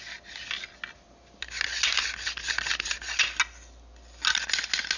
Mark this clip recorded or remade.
recorded